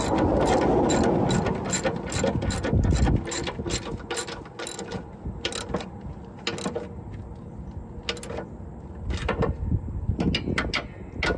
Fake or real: real